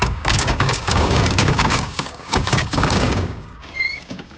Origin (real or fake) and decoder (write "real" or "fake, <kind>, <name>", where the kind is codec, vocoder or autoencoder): fake, codec, DAC